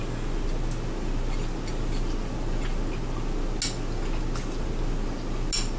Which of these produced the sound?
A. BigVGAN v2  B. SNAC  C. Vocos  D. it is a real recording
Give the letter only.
D